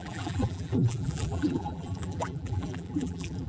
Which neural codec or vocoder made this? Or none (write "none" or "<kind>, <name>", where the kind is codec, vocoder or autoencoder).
vocoder, BigVGAN v2